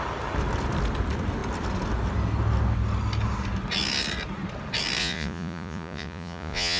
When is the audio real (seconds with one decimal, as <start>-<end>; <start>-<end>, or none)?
0.0-5.0